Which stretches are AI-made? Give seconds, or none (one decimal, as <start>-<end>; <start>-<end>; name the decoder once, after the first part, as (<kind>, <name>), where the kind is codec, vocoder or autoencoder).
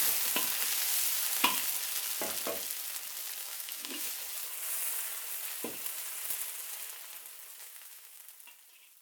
3.4-4.1 (autoencoder, DAC-VAE); 7.6-8.2